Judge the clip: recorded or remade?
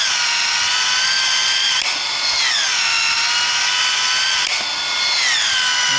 recorded